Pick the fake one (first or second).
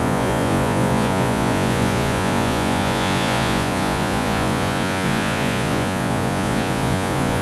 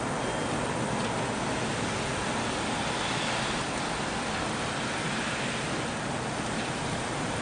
first